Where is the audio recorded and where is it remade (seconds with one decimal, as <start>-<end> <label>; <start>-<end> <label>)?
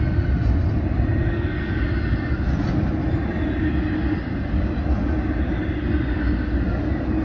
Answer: 0.0-1.3 recorded; 1.3-1.8 remade; 1.8-7.2 recorded